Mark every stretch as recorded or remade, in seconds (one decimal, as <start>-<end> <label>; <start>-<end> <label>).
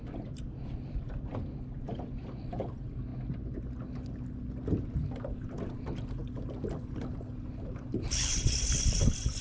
0.0-6.2 recorded; 6.2-6.8 remade; 6.8-9.4 recorded